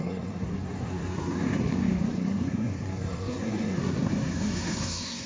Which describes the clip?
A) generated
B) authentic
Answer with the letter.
A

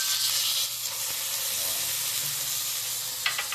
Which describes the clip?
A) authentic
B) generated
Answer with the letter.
A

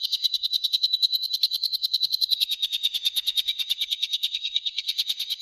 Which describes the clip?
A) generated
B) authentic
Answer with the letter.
A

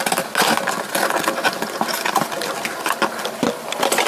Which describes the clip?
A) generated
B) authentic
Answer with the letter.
B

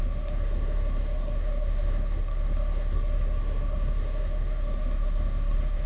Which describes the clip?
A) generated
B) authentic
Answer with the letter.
A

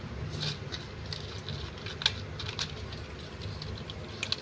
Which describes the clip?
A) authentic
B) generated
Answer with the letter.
A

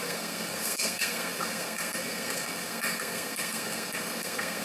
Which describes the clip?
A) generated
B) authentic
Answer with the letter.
A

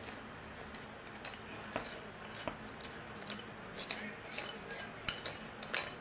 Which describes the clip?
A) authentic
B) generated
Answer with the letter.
A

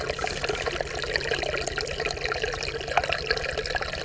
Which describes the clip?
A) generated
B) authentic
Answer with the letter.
B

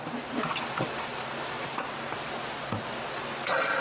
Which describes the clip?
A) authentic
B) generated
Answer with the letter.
A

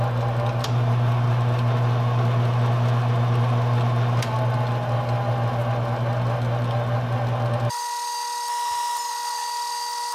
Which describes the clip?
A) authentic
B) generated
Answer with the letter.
A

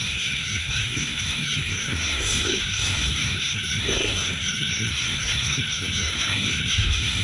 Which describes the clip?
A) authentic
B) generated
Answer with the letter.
B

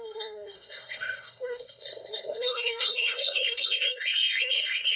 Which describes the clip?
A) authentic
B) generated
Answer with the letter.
B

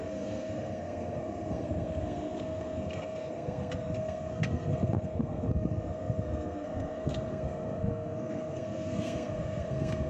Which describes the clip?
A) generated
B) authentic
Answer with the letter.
A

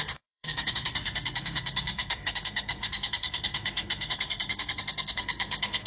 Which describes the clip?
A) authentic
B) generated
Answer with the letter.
B